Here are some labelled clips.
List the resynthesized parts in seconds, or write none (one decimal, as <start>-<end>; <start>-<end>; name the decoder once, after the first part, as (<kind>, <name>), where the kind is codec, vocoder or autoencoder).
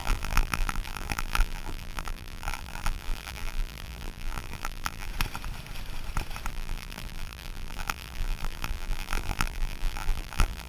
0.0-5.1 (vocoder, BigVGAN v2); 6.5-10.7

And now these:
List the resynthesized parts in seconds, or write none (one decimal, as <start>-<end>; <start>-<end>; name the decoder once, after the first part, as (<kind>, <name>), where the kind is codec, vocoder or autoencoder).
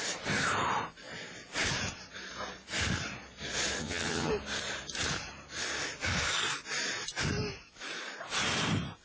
3.8-4.3 (vocoder, HiFi-GAN)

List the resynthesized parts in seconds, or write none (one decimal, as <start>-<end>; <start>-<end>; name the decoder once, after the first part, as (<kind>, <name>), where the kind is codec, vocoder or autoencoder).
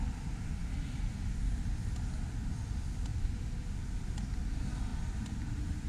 none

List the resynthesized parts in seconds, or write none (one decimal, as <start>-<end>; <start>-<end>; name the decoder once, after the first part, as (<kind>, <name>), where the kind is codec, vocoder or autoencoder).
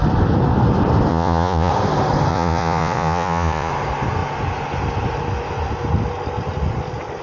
1.1-1.7 (vocoder, Vocos); 2.3-3.7